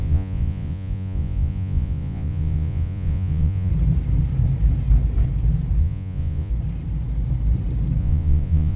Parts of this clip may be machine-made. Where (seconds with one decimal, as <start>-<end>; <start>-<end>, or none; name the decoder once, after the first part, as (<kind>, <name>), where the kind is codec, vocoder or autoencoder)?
0.0-3.7 (vocoder, Vocos); 5.8-6.5; 8.0-8.8